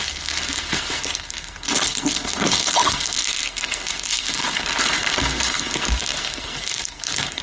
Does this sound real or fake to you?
fake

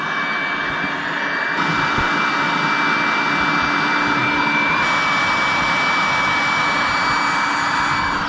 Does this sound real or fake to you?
real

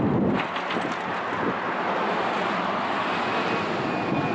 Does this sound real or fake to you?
real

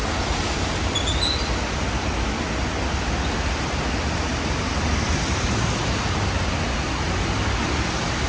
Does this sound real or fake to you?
real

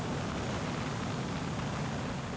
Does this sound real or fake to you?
real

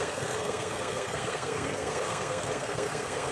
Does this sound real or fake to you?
fake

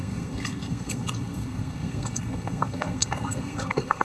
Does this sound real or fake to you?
fake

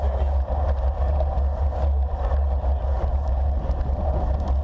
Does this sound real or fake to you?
real